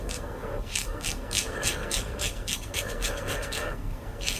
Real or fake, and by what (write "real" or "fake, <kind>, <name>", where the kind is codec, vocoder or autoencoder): fake, codec, SNAC